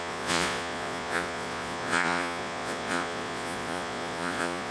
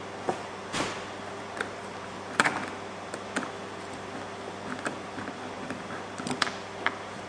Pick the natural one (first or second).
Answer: second